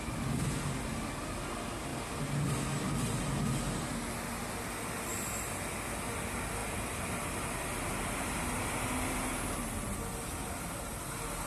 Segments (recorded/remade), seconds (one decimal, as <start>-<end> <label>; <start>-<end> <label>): 0.0-6.6 recorded; 6.6-7.5 remade; 7.5-11.5 recorded